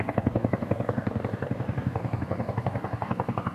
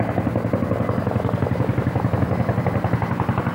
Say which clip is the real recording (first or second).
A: second